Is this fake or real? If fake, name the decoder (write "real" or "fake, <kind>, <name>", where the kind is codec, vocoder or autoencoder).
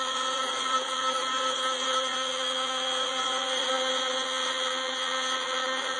fake, vocoder, Vocos